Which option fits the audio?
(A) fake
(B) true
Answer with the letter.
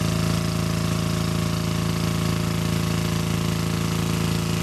B